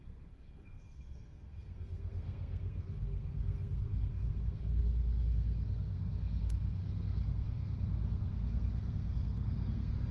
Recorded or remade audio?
remade